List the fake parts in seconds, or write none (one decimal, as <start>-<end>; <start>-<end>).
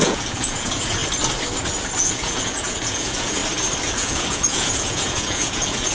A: 0.0-1.0; 2.0-3.4; 3.9-5.9